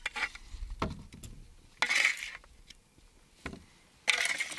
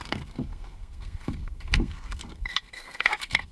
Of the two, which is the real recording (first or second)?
first